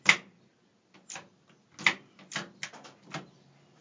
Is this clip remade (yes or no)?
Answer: no